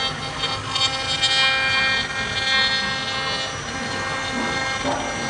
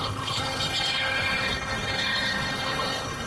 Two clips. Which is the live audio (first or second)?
first